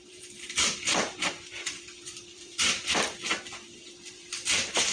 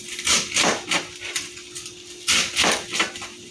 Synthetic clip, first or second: first